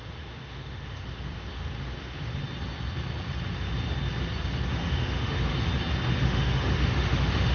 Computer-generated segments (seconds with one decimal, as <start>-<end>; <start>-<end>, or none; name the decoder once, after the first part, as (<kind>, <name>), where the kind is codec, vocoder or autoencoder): 0.0-2.4 (autoencoder, DAC-VAE); 4.7-5.5; 6.2-7.5